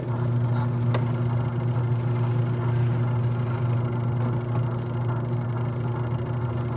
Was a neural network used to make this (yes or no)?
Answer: no